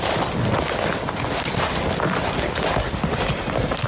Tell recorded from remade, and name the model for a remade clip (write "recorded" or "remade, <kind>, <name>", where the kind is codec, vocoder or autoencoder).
recorded